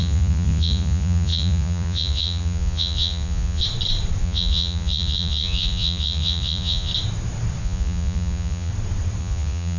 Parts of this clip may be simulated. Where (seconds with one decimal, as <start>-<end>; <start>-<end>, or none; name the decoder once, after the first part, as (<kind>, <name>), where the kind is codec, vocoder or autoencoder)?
0.0-3.6 (vocoder, Vocos); 4.2-6.9; 7.6-8.7; 9.2-9.8